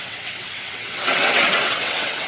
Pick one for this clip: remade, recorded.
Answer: remade